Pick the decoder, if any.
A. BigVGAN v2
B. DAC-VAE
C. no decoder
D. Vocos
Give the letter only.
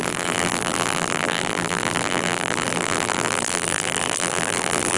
A